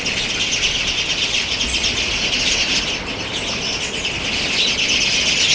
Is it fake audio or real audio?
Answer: real